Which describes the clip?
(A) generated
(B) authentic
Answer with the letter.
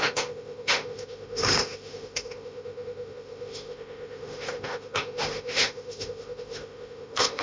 A